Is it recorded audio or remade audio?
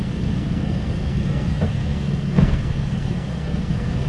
remade